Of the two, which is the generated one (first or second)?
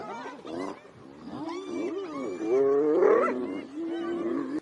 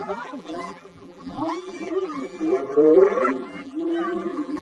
second